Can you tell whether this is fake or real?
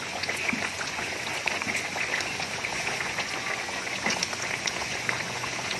fake